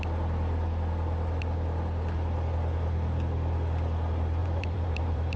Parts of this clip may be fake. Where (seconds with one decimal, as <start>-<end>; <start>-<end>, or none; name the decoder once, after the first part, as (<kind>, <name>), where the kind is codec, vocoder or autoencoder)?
4.4-5.4 (vocoder, BigVGAN v2)